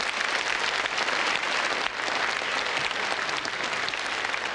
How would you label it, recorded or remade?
recorded